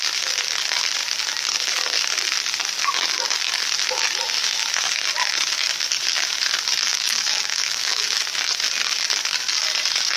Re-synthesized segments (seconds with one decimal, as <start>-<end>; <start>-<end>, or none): 6.9-8.2